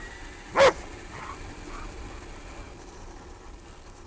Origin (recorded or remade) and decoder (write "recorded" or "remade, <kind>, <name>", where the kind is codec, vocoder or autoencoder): recorded